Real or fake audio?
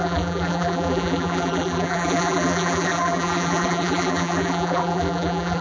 fake